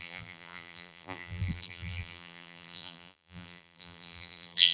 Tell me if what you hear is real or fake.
fake